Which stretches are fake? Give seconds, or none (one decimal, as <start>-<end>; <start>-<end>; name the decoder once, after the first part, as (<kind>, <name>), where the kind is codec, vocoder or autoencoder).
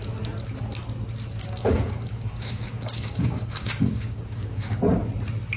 1.4-4.8 (codec, DAC)